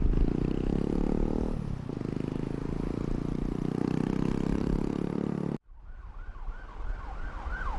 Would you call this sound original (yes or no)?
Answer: yes